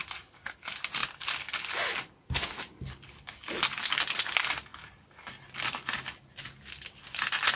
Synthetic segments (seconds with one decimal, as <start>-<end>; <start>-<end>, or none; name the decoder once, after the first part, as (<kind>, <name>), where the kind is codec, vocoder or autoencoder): none